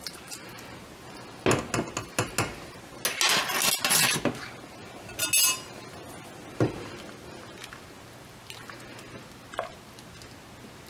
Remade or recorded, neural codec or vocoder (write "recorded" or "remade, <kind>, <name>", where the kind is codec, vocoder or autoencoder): recorded